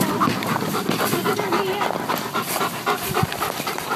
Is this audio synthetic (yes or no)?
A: no